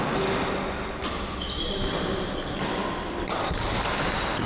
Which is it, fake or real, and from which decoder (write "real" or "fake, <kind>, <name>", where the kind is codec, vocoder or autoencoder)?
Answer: real